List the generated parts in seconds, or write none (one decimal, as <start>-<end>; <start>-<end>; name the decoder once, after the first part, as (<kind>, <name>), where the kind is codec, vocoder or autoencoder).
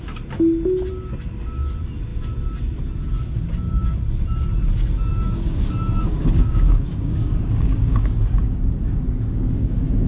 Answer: 5.1-10.1 (codec, DAC)